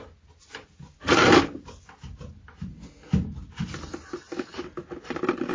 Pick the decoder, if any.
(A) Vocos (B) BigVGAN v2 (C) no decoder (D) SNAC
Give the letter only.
C